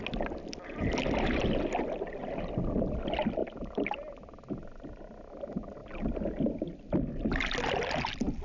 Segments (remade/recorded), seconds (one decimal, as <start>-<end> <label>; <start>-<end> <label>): 0.0-3.4 recorded; 3.4-5.3 remade; 5.3-8.4 recorded